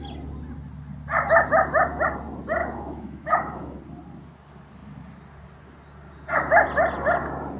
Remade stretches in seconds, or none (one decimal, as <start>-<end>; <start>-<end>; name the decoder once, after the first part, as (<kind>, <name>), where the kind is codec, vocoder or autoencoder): 2.6-3.8 (autoencoder, DAC-VAE)